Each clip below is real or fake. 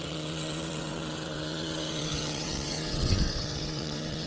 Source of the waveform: fake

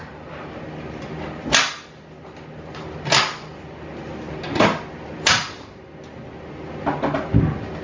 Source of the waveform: real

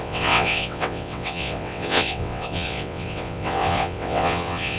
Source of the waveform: fake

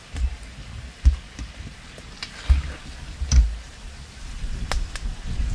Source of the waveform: real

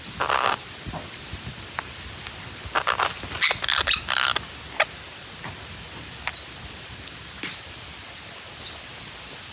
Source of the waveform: real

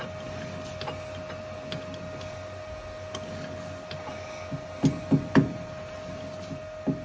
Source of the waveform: real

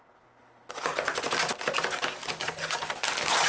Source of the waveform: real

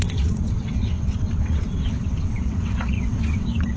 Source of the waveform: fake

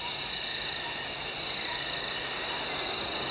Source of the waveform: real